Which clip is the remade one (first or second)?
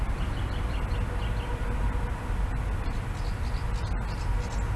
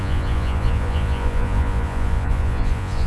second